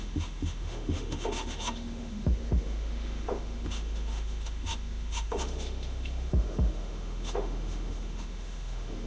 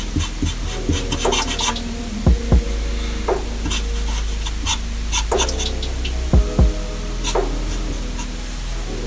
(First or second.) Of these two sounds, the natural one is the second